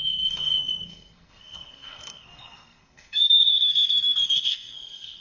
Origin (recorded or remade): remade